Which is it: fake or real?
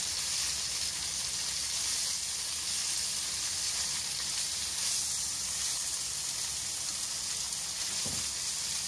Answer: real